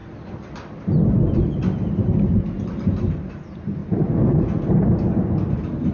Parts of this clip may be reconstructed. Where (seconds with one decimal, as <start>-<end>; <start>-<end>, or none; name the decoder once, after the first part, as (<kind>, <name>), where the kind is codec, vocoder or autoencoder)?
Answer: none